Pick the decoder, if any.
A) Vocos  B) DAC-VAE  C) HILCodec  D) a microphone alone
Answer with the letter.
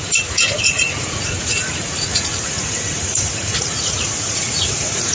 A